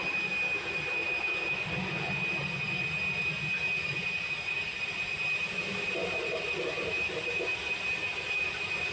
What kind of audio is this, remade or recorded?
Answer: recorded